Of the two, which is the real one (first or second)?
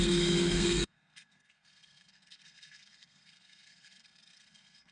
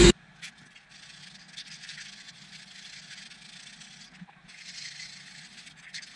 second